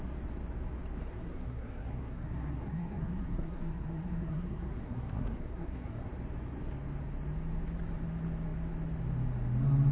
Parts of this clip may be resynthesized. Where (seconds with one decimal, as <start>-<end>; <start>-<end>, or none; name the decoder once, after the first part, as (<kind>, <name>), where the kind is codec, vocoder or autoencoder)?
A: 1.0-6.1 (codec, SNAC)